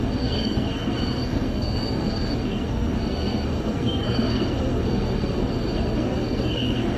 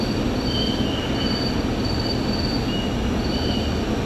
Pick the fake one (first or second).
first